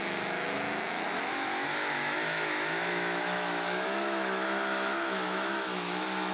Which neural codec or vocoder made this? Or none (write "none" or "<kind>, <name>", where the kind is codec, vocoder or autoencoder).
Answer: autoencoder, DAC-VAE